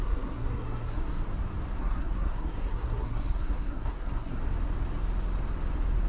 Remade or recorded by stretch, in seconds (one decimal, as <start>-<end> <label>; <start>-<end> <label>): 0.0-1.2 remade; 1.2-1.8 recorded; 1.8-4.4 remade; 4.4-6.1 recorded